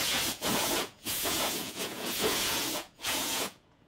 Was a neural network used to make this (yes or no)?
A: yes